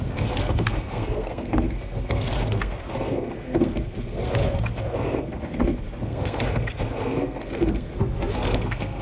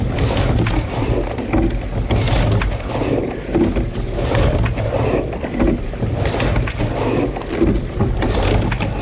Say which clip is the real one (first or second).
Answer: second